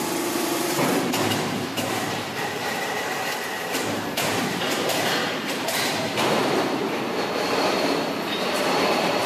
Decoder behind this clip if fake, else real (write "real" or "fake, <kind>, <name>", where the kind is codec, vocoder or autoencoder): fake, vocoder, BigVGAN v2